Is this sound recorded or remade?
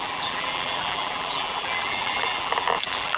remade